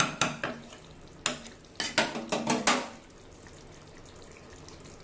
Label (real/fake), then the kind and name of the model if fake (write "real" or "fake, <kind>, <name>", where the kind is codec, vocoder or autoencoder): real